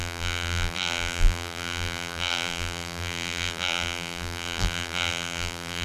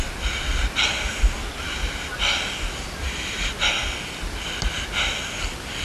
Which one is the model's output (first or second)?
first